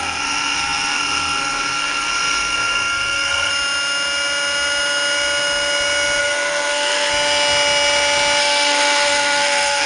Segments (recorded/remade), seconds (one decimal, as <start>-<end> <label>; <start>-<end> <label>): 0.0-3.5 remade; 3.5-6.2 recorded; 6.2-7.1 remade; 7.1-8.4 recorded; 8.4-9.9 remade